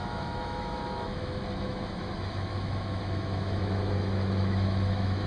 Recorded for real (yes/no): no